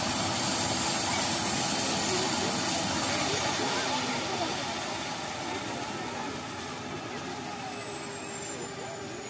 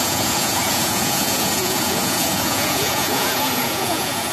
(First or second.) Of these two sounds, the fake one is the second